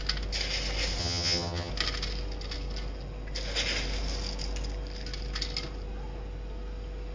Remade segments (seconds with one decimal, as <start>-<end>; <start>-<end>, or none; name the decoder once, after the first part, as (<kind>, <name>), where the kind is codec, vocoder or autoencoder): 1.0-1.7 (vocoder, HiFi-GAN)